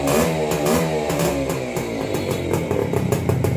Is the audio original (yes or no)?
yes